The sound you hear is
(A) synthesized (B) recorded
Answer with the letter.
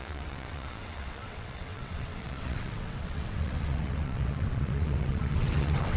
A